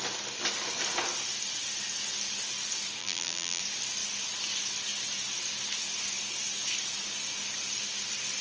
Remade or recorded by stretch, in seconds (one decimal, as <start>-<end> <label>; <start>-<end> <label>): 0.0-3.0 recorded; 3.0-3.6 remade; 3.6-8.4 recorded